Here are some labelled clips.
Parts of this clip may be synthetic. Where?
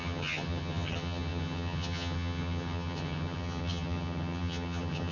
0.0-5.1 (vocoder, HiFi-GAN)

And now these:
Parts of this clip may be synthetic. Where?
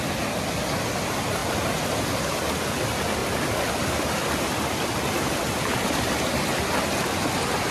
1.4-2.2 (vocoder, BigVGAN v2); 3.2-7.3